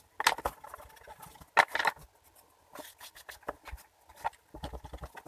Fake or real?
real